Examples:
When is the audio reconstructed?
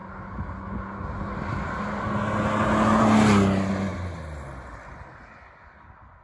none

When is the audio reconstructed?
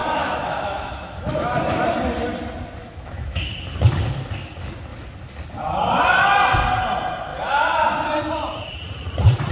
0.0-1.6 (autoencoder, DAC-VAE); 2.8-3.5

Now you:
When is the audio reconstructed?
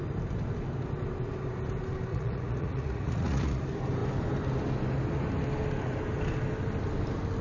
2.1-3.6 (vocoder, Vocos)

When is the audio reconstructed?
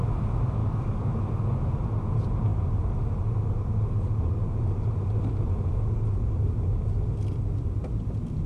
0.6-1.1 (codec, DAC)